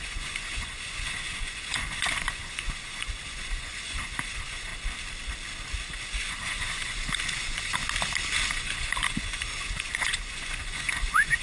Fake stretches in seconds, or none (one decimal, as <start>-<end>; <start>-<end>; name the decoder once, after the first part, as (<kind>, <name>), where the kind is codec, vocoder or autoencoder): 0.0-4.7 (vocoder, Vocos); 6.0-7.8; 8.5-11.4